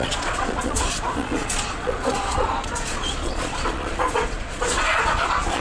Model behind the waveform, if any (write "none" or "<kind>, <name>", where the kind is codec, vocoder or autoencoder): vocoder, Vocos